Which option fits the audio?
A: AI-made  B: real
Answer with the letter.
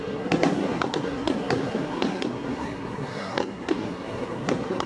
A